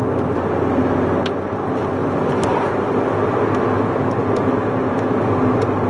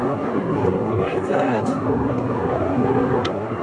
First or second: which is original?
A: first